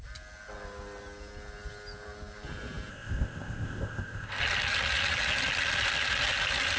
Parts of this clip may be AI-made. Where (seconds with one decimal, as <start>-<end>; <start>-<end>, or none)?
2.9-4.4